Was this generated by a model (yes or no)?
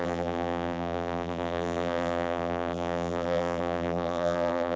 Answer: yes